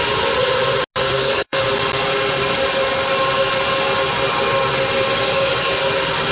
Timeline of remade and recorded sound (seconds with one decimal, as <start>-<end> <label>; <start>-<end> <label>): 0.0-1.0 recorded; 1.0-1.6 remade; 1.6-6.3 recorded